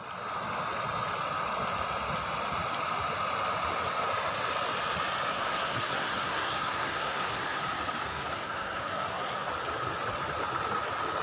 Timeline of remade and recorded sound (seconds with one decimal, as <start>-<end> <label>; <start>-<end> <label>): 0.0-5.3 recorded; 5.3-7.6 remade; 7.6-8.1 recorded; 8.1-9.5 remade; 9.5-11.2 recorded